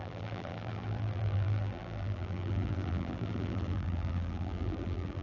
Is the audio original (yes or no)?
no